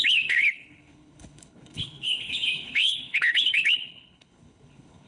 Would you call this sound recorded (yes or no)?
no